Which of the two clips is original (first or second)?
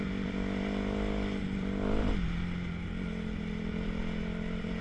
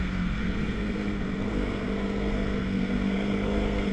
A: first